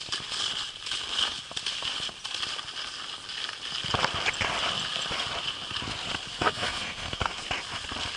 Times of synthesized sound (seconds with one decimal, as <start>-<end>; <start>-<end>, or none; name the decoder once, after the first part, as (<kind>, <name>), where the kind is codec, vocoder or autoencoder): 6.3-7.4 (codec, SNAC)